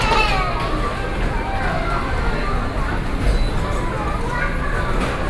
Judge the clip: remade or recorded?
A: recorded